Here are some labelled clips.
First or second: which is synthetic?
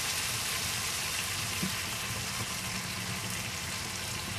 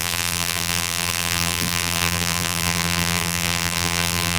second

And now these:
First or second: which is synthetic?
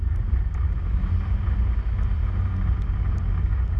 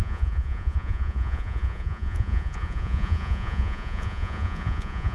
second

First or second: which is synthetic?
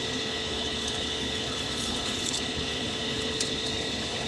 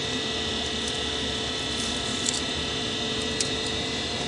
first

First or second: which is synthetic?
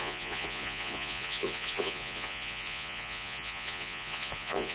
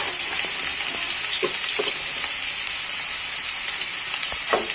first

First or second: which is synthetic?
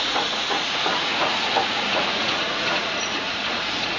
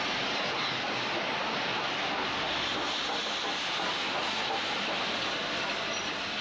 first